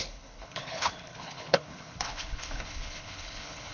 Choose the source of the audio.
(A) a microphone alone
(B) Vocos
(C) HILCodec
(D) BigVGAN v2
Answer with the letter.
C